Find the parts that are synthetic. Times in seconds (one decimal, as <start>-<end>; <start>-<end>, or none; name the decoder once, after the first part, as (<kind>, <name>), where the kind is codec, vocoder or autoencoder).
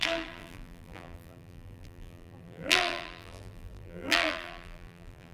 0.0-5.3 (vocoder, BigVGAN v2)